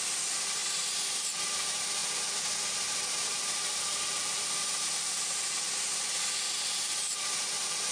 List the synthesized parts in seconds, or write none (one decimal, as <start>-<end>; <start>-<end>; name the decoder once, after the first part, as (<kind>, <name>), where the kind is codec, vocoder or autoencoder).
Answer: none